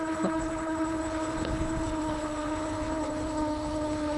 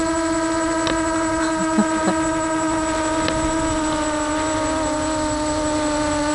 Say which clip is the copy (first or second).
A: first